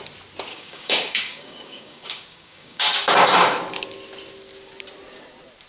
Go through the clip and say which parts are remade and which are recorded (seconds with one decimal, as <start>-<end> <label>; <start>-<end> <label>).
0.0-0.5 recorded; 0.5-3.0 remade; 3.0-5.7 recorded